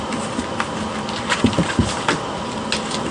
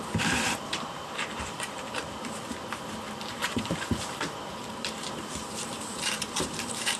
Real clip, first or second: first